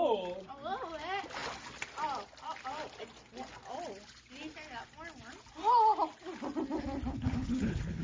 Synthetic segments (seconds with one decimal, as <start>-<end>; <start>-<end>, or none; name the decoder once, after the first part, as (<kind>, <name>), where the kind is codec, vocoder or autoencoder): 7.1-8.0 (codec, HILCodec)